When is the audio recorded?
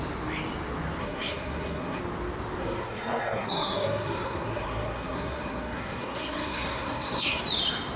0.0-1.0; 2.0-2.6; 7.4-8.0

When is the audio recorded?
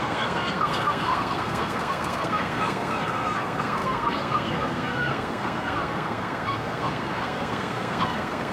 none